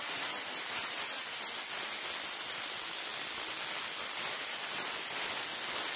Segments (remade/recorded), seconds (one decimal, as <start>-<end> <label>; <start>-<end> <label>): 0.0-6.0 recorded